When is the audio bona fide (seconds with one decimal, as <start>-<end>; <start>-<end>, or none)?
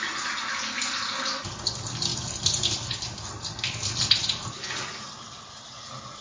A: 0.0-2.1; 3.4-6.2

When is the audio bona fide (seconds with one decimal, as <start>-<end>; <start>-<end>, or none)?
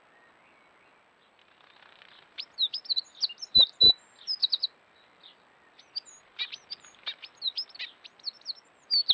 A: 0.0-1.4; 5.8-6.3; 6.9-9.1